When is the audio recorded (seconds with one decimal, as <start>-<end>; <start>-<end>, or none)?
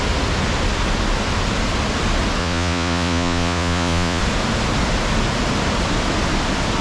0.0-2.4; 4.2-6.8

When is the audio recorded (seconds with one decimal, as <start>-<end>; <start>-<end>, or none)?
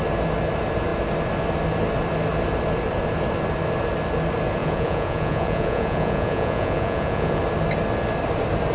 0.0-4.6; 7.4-8.7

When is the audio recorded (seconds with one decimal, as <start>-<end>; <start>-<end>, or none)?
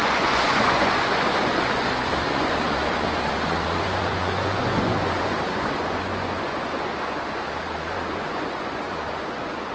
none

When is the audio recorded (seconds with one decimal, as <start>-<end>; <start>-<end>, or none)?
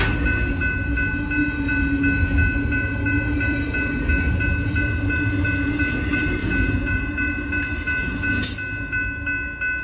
0.0-6.4; 7.0-8.0; 8.5-9.8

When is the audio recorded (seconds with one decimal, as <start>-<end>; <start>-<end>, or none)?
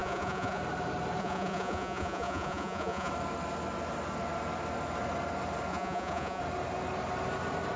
0.6-1.2; 3.1-5.7; 6.4-7.8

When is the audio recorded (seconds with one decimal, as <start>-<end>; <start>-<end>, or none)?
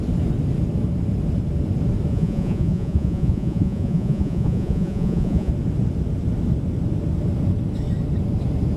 0.0-2.1; 5.5-8.8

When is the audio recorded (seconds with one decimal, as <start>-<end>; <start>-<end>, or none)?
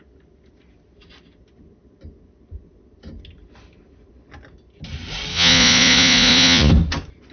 0.0-5.3; 6.7-7.3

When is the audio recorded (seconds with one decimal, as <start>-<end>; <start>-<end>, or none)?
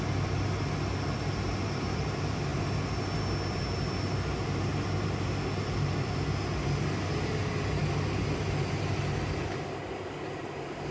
0.0-10.9